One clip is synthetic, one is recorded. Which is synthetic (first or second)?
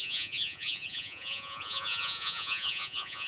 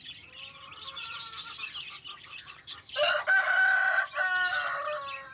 first